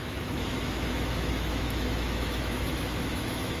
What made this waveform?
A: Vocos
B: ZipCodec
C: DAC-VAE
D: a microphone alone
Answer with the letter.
C